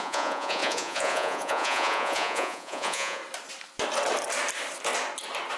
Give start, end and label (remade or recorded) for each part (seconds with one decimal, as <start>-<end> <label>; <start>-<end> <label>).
0.0-3.2 remade; 3.2-5.6 recorded